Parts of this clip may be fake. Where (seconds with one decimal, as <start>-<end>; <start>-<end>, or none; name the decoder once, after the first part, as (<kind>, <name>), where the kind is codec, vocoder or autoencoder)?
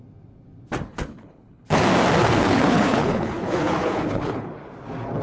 0.9-1.8 (codec, HILCodec); 2.2-4.7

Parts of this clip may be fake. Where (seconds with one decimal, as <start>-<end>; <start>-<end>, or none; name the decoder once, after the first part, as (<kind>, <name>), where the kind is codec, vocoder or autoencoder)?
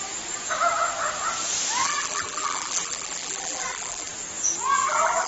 1.8-4.1 (vocoder, BigVGAN v2); 4.8-5.3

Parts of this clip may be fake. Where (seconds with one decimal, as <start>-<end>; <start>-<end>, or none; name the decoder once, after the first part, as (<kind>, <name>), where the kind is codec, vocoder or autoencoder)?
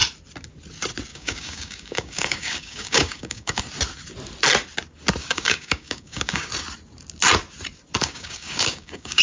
1.1-3.6 (codec, DAC); 5.2-6.5; 8.0-9.2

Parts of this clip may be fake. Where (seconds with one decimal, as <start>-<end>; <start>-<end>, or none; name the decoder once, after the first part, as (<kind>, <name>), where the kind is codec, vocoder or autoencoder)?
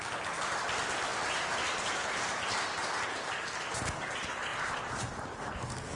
none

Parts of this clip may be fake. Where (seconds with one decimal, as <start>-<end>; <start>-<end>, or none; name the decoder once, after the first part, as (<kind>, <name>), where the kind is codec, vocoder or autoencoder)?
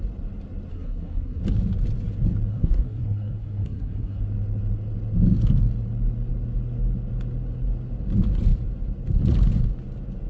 0.7-1.4 (codec, SNAC); 2.5-4.2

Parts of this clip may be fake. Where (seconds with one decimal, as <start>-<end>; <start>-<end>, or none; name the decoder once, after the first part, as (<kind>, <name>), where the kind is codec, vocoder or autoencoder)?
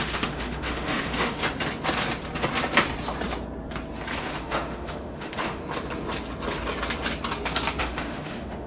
0.0-1.4 (autoencoder, DAC-VAE); 4.2-5.6; 7.8-8.7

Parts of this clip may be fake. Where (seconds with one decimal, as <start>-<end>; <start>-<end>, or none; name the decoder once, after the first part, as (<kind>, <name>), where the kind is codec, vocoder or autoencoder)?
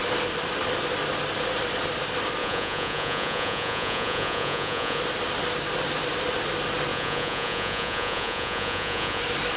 2.4-5.0 (vocoder, Vocos); 6.9-9.2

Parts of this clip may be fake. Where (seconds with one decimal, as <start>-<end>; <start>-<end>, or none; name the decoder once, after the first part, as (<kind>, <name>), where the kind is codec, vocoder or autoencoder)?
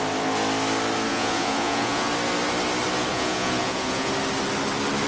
1.1-2.1 (vocoder, Vocos); 3.1-4.1